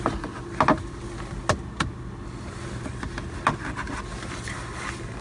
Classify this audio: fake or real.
real